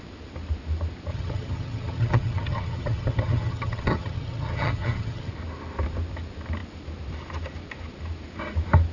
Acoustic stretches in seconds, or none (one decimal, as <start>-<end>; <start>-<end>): 0.0-1.1; 5.3-8.9